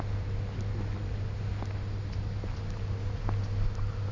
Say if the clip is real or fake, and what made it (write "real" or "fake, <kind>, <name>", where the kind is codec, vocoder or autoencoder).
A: real